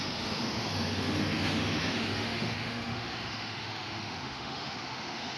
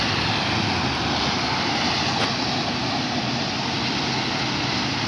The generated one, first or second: first